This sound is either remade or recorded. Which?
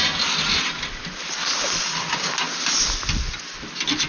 recorded